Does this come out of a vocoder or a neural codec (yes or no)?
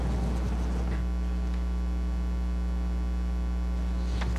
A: no